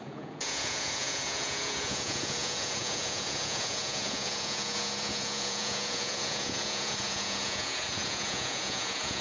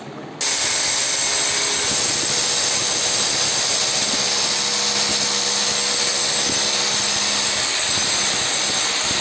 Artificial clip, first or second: first